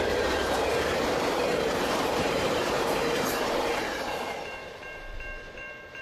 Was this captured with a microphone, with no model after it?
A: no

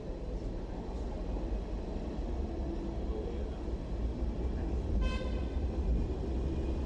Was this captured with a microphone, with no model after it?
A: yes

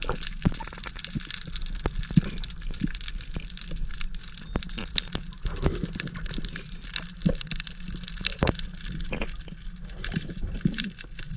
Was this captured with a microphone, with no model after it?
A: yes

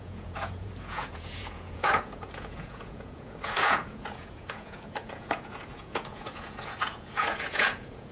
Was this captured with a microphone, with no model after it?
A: no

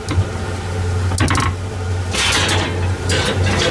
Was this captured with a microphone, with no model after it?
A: yes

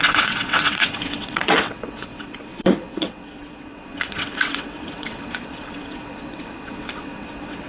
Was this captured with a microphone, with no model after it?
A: no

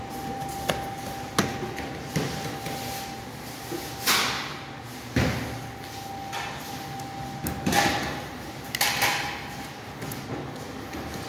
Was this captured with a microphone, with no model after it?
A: yes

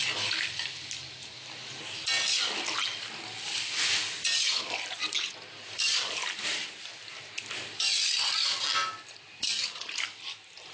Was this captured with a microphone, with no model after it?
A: yes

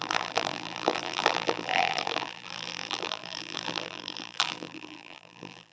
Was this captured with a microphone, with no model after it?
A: no